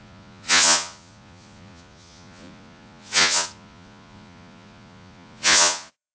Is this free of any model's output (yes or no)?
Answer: no